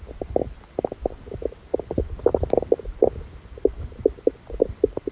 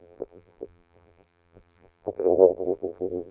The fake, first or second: second